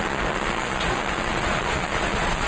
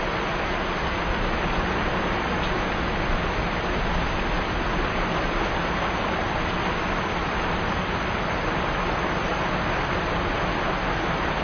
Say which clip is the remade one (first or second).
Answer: first